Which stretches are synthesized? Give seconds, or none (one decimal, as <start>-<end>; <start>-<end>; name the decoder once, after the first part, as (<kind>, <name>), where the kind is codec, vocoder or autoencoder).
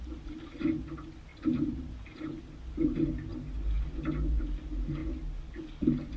1.3-2.4 (vocoder, BigVGAN v2)